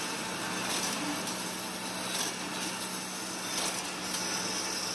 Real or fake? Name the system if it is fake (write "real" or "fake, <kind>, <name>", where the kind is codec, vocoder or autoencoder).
real